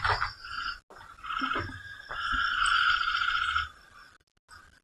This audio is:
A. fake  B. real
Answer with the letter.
B